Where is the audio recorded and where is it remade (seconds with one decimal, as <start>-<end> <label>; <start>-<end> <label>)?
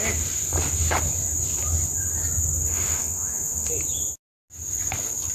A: 0.0-2.7 recorded; 2.7-3.7 remade; 3.7-5.3 recorded